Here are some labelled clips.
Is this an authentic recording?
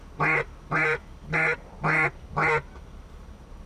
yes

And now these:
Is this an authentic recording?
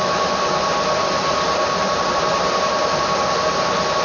yes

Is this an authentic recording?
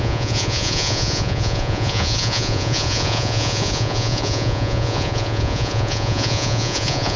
no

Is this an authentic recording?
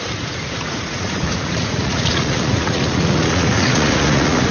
no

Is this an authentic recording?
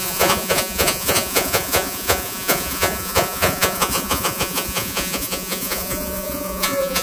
no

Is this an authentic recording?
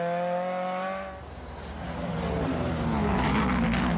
yes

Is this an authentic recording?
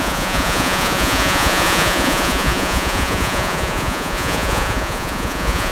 no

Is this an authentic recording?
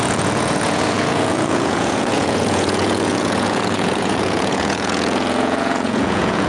no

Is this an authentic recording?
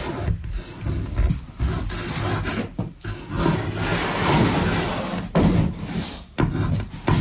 yes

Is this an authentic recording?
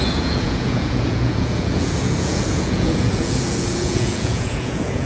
no